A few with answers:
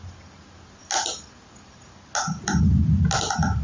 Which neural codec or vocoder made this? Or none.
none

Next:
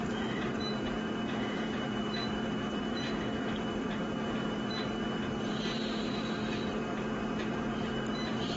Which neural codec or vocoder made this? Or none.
vocoder, BigVGAN v2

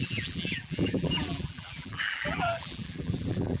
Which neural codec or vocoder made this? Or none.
vocoder, BigVGAN v2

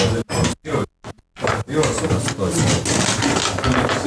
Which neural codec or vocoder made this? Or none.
none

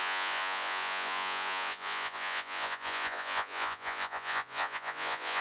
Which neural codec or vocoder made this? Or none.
vocoder, Vocos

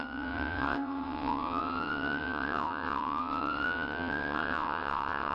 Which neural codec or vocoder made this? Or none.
vocoder, WaveNeXt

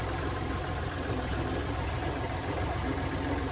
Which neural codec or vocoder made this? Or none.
none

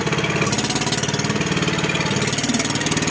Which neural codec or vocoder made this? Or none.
none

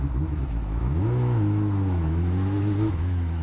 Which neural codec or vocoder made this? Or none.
autoencoder, DAC-VAE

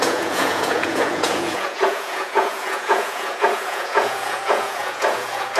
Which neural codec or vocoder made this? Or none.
vocoder, Vocos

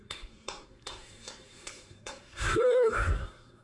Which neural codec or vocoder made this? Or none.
codec, SNAC